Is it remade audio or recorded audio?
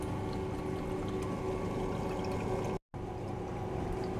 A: recorded